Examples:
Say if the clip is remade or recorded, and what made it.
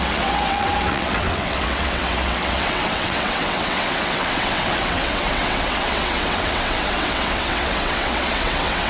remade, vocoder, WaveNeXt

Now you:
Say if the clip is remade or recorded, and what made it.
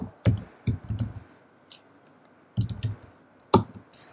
recorded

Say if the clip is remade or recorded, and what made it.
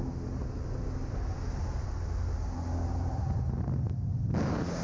recorded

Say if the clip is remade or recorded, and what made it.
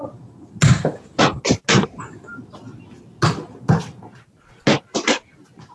recorded